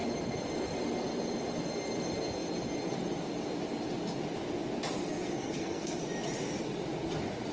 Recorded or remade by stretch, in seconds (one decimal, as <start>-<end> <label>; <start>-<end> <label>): 0.0-5.0 recorded; 5.0-6.0 remade; 6.0-7.5 recorded